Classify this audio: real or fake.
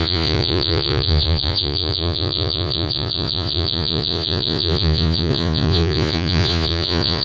fake